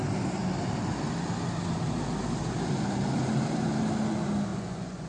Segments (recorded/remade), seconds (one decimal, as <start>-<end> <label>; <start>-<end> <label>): 0.0-4.5 recorded; 4.5-5.1 remade